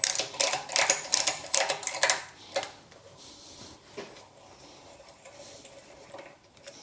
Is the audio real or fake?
real